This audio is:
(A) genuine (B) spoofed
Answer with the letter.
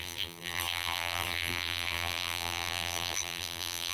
B